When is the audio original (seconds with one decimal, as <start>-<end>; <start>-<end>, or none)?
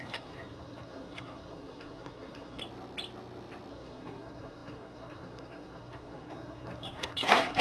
2.6-3.7